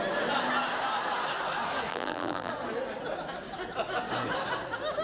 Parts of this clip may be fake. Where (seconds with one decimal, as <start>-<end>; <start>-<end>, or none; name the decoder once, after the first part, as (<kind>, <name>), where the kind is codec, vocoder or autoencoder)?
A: 1.9-2.5 (vocoder, BigVGAN v2)